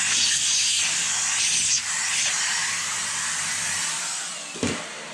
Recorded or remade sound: recorded